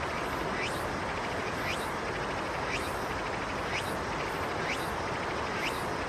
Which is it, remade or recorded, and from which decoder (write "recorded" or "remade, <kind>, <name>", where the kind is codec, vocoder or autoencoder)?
recorded